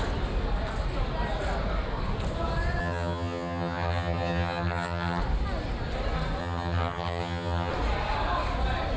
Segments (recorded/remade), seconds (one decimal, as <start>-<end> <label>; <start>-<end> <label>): 0.0-2.8 recorded; 2.8-5.2 remade; 5.2-6.4 recorded; 6.4-7.7 remade; 7.7-9.0 recorded